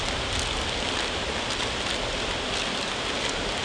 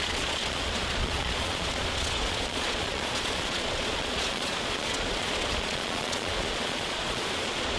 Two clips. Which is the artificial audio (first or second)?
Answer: second